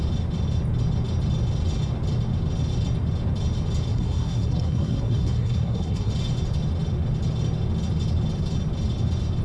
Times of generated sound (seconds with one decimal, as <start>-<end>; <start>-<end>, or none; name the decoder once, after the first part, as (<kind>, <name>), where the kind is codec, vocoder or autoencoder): 3.9-6.1 (codec, SNAC)